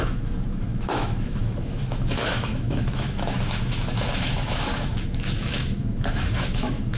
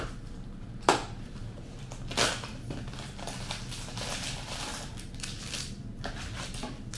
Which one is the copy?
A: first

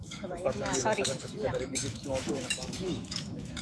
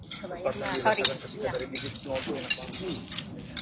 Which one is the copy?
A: first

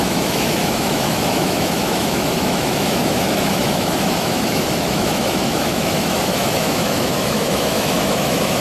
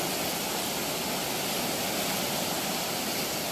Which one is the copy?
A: first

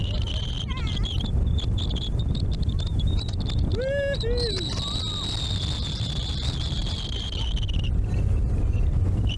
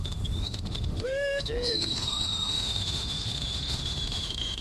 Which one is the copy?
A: second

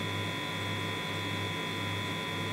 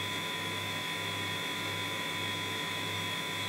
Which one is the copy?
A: second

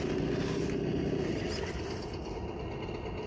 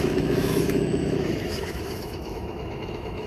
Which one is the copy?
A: second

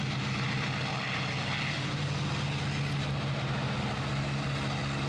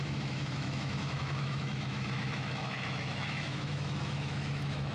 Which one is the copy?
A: second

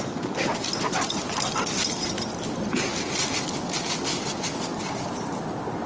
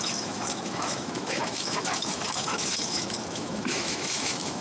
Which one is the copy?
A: second